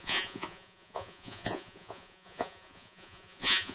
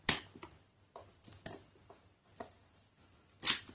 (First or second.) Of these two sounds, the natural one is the second